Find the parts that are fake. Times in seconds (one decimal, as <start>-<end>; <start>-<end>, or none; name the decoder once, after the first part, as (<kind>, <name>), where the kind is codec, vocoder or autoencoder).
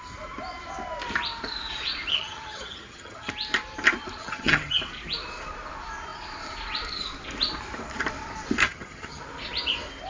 2.1-3.3 (vocoder, HiFi-GAN); 4.2-4.8; 8.6-9.2